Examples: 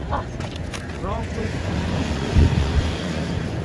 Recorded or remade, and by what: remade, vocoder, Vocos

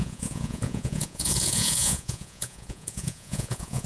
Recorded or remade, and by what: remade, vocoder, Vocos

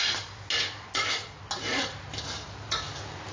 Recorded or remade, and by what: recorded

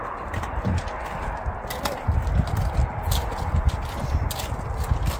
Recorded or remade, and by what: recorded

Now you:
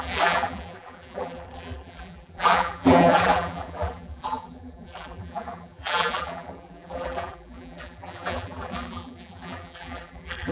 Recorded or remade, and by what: remade, vocoder, BigVGAN v2